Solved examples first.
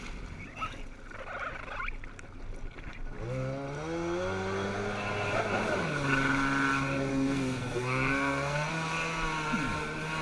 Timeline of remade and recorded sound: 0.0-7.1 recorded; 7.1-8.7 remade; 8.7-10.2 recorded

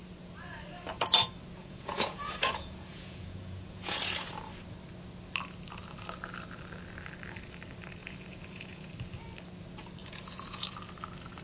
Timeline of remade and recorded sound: 0.0-1.6 recorded; 1.6-4.0 remade; 4.0-8.0 recorded; 8.0-8.9 remade; 8.9-10.0 recorded; 10.0-10.8 remade; 10.8-11.4 recorded

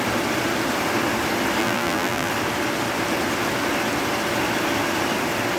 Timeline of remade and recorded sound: 0.0-1.6 recorded; 1.6-2.3 remade; 2.3-5.6 recorded

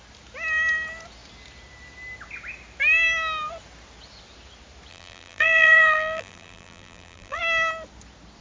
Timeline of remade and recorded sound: 0.0-4.9 recorded; 4.9-7.4 remade; 7.4-8.4 recorded

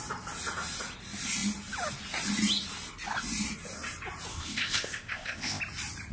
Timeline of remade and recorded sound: 0.0-4.3 recorded; 4.3-5.6 remade; 5.6-6.1 recorded

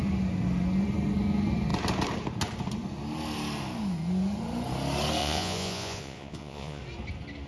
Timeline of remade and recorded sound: 0.0-5.2 recorded; 5.2-6.8 remade; 6.8-7.5 recorded

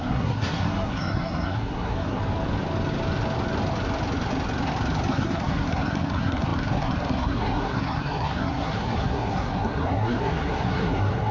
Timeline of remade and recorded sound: 0.0-2.2 remade; 2.2-5.1 recorded; 5.1-11.3 remade